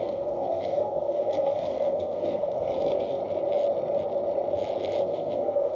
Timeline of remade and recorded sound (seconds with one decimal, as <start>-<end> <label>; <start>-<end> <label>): 0.0-3.2 remade; 3.2-5.0 recorded; 5.0-5.8 remade